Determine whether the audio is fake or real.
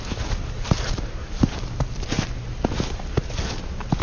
real